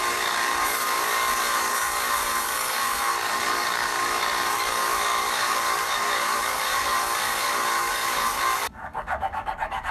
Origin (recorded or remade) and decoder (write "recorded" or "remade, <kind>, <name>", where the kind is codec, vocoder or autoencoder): remade, codec, DAC